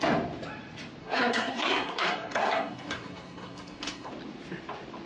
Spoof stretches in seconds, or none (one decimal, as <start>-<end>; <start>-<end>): 1.0-4.1